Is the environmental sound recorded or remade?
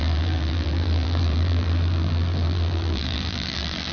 remade